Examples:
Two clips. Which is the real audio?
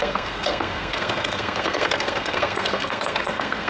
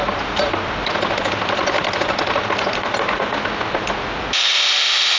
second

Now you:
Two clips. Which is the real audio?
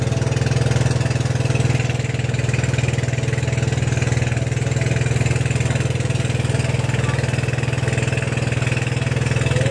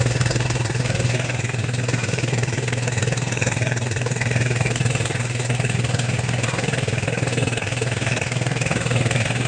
first